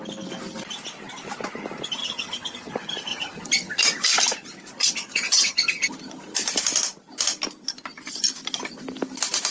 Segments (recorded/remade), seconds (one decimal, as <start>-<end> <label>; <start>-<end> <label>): 0.0-2.0 recorded; 2.0-2.7 remade; 2.7-3.1 recorded; 3.1-3.8 remade; 3.8-5.1 recorded; 5.1-5.9 remade; 5.9-9.5 recorded